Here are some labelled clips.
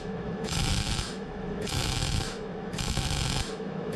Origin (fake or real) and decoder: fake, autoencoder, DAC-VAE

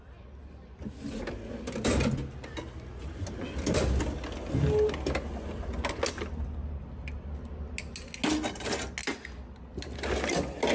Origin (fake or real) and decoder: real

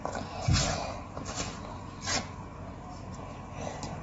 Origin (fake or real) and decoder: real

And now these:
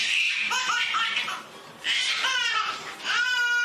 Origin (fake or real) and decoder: real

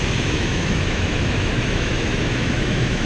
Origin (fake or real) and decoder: fake, autoencoder, DAC-VAE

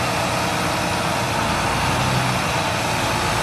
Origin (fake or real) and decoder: real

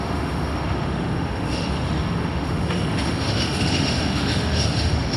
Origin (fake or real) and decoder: fake, autoencoder, DAC-VAE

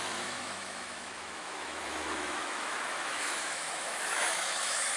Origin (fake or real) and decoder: fake, autoencoder, DAC-VAE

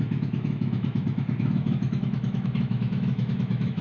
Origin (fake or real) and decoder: fake, autoencoder, DAC-VAE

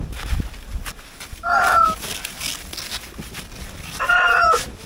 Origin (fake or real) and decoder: real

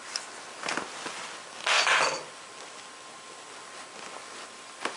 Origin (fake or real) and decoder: real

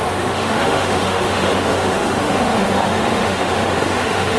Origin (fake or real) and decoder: fake, autoencoder, DAC-VAE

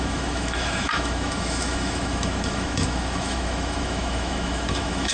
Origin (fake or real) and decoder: fake, autoencoder, DAC-VAE